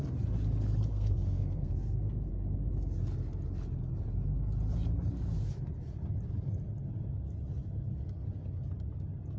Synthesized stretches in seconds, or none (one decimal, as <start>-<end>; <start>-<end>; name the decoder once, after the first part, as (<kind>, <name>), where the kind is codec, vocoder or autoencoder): 0.9-2.3 (codec, SNAC)